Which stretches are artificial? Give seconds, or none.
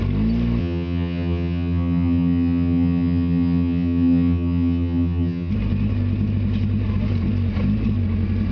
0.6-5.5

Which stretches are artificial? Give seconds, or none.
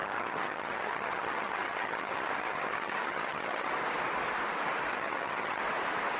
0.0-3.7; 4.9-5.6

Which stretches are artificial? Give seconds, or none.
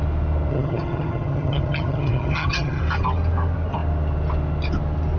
0.5-2.8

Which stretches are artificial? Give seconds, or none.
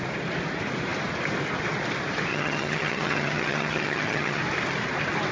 2.3-4.4